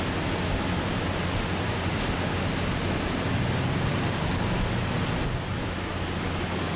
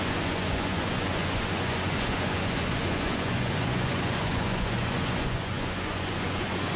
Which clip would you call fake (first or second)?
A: second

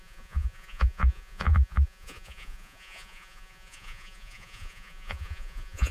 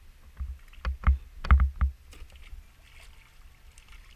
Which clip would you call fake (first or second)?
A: first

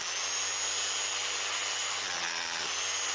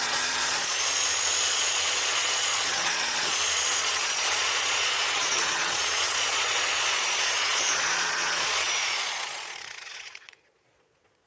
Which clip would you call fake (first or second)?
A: second